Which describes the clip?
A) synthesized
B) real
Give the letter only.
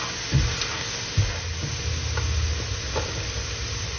B